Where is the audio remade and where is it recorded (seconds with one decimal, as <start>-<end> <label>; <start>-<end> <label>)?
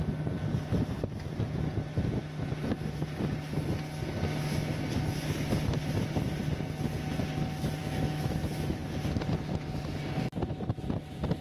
0.0-7.8 recorded; 7.8-8.4 remade; 8.4-11.4 recorded